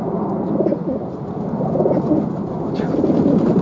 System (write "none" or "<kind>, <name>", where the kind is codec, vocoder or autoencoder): none